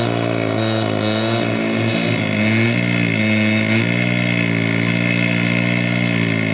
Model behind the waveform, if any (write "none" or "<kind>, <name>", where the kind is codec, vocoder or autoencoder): none